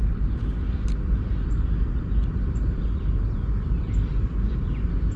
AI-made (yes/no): no